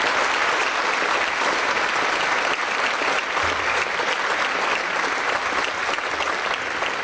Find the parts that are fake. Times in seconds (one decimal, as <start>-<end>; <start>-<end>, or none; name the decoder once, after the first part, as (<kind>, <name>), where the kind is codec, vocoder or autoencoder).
none